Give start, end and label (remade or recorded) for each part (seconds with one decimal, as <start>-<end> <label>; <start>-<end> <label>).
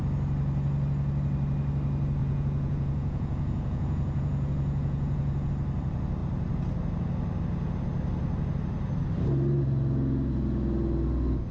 0.0-2.2 recorded; 2.2-5.5 remade; 5.5-11.5 recorded